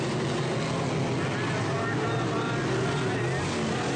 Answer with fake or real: real